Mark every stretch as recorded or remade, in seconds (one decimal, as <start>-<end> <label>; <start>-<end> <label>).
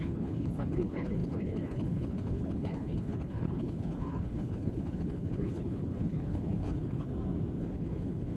0.0-7.1 remade; 7.1-7.6 recorded; 7.6-8.4 remade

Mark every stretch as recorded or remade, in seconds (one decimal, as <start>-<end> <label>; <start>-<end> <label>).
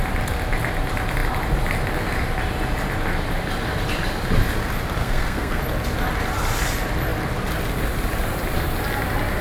0.0-5.0 recorded; 5.0-5.6 remade; 5.6-9.4 recorded